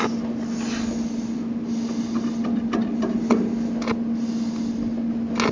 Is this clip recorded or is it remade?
recorded